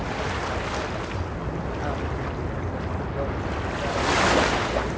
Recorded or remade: recorded